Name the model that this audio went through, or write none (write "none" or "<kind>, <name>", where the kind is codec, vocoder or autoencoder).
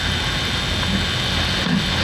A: none